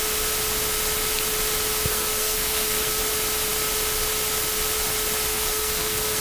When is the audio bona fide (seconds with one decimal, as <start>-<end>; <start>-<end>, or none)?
0.0-1.9; 3.0-5.3